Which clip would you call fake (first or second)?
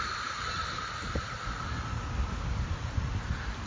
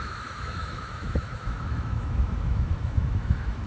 second